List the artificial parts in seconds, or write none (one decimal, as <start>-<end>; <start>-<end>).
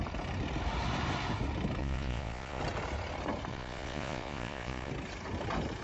1.8-2.6; 3.5-4.9